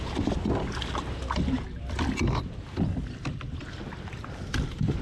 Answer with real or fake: real